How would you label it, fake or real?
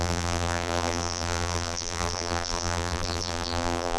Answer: fake